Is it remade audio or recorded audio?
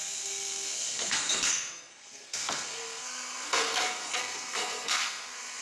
remade